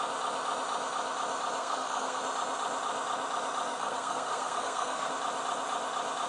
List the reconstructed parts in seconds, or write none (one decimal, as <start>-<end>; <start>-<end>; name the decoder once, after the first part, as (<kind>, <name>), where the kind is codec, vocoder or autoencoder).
1.6-2.2 (codec, SNAC); 3.7-5.1